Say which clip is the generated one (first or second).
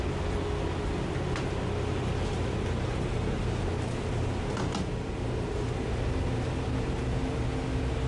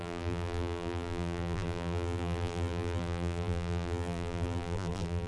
second